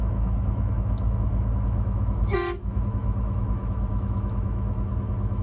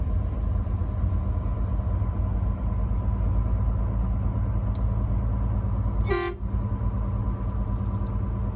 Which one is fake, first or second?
first